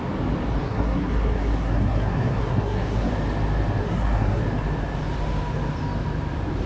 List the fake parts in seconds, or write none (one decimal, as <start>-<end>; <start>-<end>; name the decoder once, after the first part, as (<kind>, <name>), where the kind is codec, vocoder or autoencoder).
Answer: 0.6-3.1 (codec, SNAC); 3.8-4.4